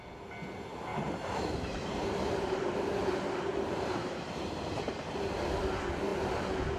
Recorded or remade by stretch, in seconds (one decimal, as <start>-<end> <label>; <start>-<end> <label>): 0.0-0.9 recorded; 0.9-5.0 remade; 5.0-6.8 recorded

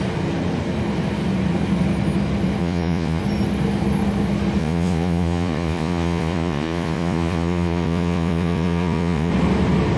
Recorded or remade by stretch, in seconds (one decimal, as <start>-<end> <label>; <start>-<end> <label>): 0.0-2.6 recorded; 2.6-3.2 remade; 3.2-4.6 recorded; 4.6-9.3 remade; 9.3-10.0 recorded

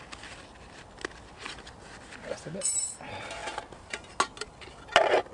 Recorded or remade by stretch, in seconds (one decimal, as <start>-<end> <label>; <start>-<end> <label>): 0.0-5.3 recorded